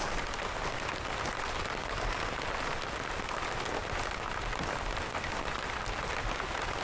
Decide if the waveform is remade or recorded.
recorded